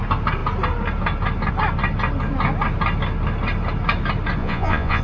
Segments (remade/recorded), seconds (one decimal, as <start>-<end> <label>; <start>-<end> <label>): 0.0-4.4 recorded; 4.4-5.0 remade